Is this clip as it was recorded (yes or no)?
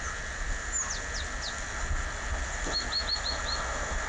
yes